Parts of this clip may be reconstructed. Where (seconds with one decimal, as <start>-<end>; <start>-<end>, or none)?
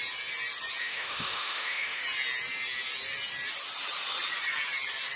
0.8-2.0